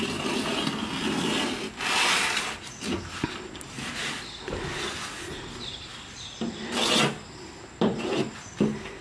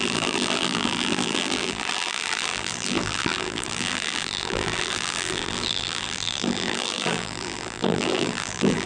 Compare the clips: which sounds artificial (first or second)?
second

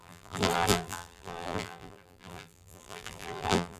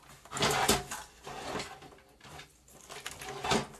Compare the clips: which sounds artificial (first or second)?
first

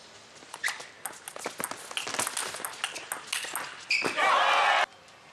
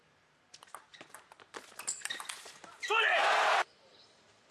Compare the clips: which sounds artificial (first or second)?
second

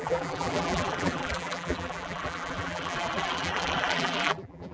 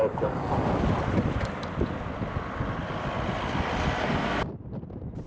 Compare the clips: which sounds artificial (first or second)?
first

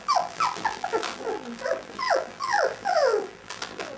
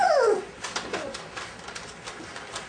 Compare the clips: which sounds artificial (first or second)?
first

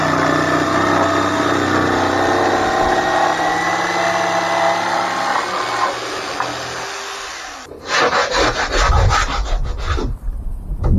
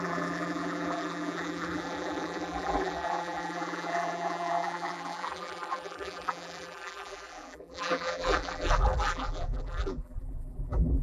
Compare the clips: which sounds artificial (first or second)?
second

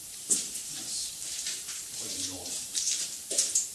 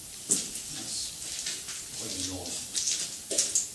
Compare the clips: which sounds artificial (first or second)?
first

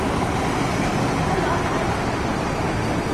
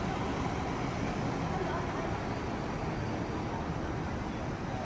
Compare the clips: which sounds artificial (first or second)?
first